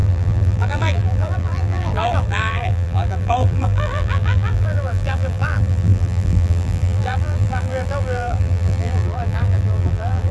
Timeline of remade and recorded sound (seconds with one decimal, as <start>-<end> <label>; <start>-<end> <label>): 0.0-10.3 remade